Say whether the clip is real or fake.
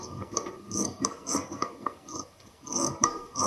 fake